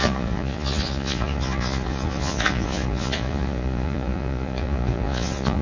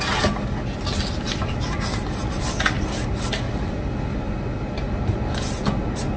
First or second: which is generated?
first